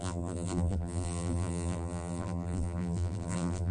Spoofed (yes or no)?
yes